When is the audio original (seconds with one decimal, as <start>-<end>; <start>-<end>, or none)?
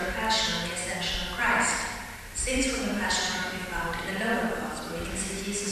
0.0-1.4; 4.8-5.7